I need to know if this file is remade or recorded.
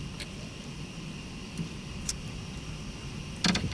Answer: recorded